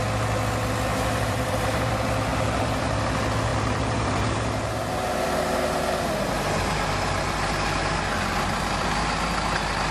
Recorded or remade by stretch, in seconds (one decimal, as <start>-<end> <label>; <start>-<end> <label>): 0.0-0.9 recorded; 0.9-1.9 remade; 1.9-2.3 recorded; 2.3-3.0 remade; 3.0-3.5 recorded; 3.5-6.1 remade; 6.1-9.9 recorded